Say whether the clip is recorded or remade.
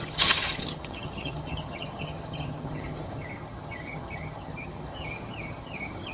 remade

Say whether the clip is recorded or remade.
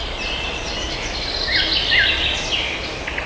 recorded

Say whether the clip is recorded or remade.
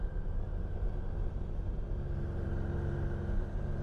recorded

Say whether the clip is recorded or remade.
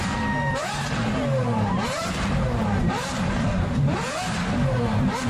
remade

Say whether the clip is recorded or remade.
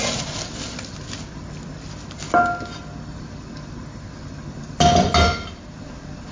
recorded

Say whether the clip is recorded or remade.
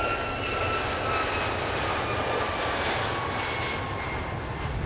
recorded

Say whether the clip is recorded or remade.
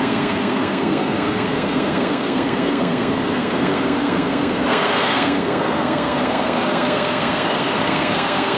remade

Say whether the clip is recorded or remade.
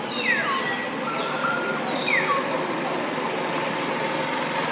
recorded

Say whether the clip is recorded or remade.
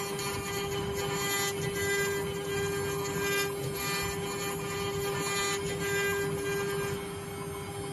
recorded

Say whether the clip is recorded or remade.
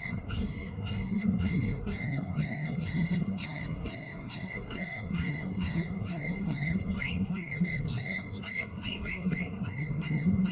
remade